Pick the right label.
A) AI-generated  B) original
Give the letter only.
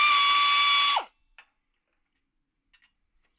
B